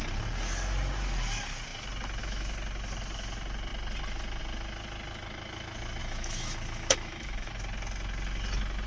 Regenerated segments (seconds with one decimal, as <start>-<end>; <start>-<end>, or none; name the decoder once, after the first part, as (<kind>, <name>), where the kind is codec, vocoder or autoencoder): 6.0-7.5 (autoencoder, DAC-VAE)